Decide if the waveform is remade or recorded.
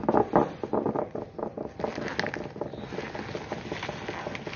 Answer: recorded